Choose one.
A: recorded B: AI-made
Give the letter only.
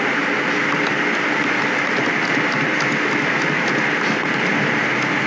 A